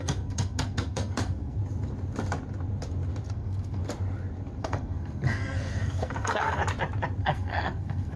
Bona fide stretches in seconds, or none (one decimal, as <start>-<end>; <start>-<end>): 1.6-3.3; 3.8-4.6; 6.6-7.2